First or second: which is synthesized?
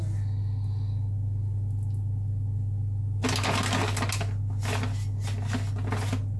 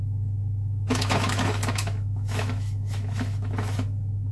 second